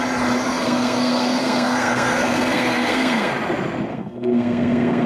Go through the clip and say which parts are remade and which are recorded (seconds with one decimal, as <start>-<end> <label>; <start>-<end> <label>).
0.0-0.5 recorded; 0.5-3.3 remade; 3.3-3.9 recorded; 3.9-5.1 remade

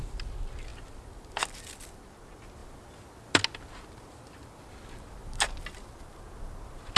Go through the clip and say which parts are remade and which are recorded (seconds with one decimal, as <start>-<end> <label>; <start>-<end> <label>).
0.0-7.0 recorded